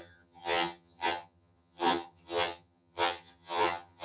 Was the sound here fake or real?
fake